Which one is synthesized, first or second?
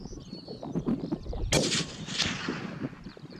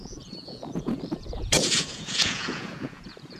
second